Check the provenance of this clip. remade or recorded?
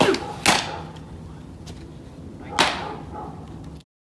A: recorded